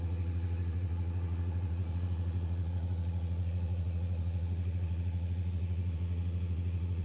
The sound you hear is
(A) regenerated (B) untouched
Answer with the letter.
A